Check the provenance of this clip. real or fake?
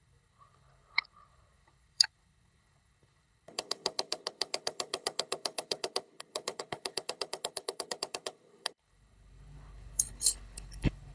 fake